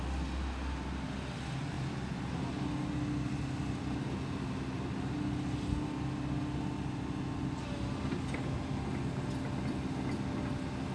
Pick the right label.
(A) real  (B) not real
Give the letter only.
A